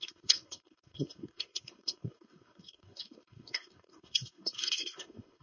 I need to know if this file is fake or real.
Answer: fake